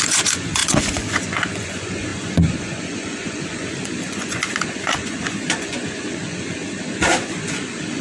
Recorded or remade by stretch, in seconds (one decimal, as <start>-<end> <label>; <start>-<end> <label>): 0.0-6.6 remade; 6.6-7.2 recorded; 7.2-8.0 remade